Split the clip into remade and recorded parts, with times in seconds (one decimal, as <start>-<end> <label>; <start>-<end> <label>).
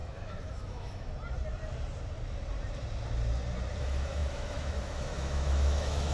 0.0-1.1 remade; 1.1-3.8 recorded; 3.8-6.1 remade